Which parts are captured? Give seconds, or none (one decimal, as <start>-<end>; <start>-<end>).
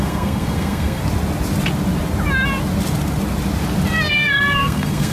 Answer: 1.0-4.1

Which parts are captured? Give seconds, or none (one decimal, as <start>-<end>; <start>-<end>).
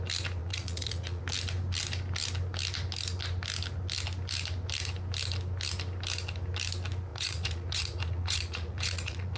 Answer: 0.0-0.4; 1.2-7.1